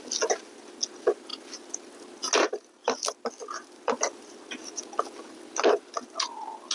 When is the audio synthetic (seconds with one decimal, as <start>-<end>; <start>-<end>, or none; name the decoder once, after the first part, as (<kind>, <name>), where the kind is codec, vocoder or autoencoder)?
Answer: none